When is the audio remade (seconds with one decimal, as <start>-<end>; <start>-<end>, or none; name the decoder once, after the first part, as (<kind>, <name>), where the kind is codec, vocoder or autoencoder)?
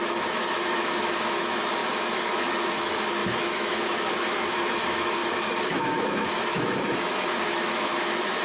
0.0-8.4 (autoencoder, DAC-VAE)